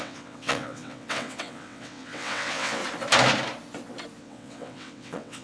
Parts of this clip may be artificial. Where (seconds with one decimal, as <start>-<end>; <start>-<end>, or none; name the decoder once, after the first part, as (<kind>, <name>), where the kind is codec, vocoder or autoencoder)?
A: 0.0-2.8 (vocoder, WaveNeXt); 4.2-5.4